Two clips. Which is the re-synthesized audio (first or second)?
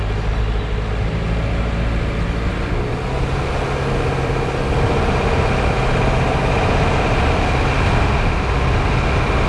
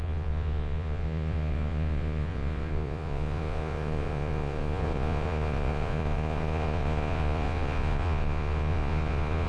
second